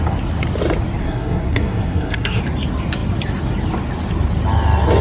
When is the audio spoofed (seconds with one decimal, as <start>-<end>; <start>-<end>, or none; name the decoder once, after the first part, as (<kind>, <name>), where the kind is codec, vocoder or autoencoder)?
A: 1.0-2.4 (codec, SNAC)